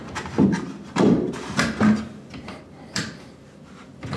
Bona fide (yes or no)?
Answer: no